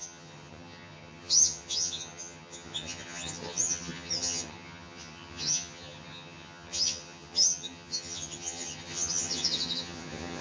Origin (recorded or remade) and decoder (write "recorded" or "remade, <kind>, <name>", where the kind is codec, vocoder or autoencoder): remade, vocoder, HiFi-GAN